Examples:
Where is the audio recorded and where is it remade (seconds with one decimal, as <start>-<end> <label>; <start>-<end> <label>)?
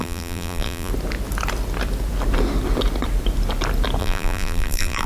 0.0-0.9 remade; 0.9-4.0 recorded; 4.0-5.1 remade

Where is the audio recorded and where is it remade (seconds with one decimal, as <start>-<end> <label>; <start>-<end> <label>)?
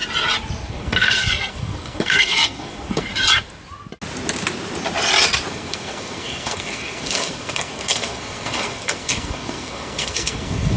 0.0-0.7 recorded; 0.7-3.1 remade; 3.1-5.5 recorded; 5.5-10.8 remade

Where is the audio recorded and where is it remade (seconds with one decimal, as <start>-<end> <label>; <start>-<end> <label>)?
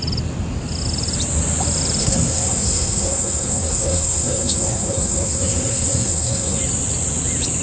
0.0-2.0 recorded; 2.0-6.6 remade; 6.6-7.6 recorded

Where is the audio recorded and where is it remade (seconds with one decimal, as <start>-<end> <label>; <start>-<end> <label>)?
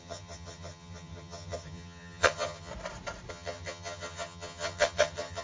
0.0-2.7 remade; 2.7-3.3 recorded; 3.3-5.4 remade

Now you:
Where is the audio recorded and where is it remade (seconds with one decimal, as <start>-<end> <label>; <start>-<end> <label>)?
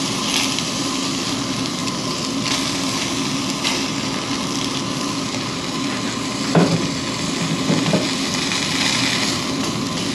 0.0-10.1 recorded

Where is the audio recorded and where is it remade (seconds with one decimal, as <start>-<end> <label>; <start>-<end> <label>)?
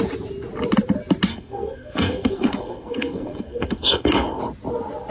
0.0-1.3 recorded; 1.3-4.4 remade; 4.4-5.1 recorded